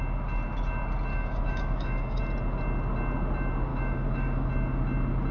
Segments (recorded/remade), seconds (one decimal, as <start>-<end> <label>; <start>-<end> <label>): 0.0-1.1 recorded; 1.1-2.2 remade; 2.2-3.7 recorded; 3.7-4.5 remade; 4.5-5.3 recorded